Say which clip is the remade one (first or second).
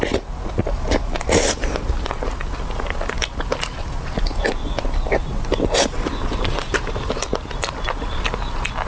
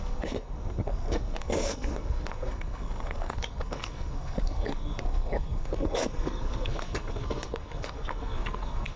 second